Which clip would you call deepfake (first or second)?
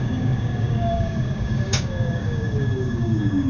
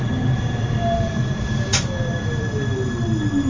first